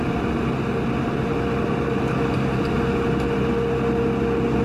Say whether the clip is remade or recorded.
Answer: recorded